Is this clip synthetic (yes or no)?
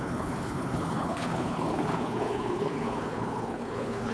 yes